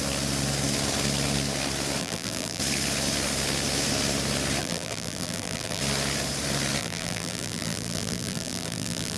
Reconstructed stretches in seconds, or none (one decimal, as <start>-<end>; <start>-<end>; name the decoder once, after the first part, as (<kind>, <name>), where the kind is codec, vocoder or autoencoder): 2.0-2.6 (vocoder, BigVGAN v2); 4.6-5.8; 6.8-9.2